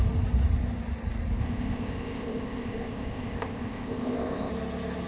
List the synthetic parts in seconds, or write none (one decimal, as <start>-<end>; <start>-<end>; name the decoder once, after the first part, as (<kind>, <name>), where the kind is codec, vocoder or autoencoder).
1.4-4.5 (codec, ZipCodec)